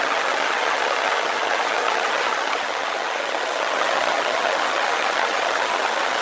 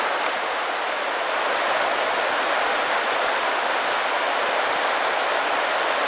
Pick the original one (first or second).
second